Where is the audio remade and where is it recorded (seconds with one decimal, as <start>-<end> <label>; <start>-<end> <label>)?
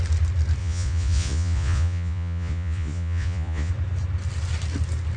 0.0-0.6 recorded; 0.6-3.7 remade; 3.7-5.2 recorded